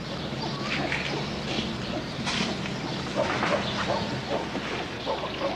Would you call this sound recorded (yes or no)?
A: yes